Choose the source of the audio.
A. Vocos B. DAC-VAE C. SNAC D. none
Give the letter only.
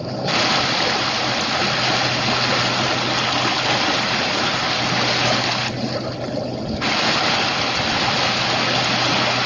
D